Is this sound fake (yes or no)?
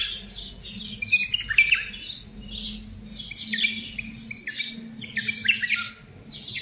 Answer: no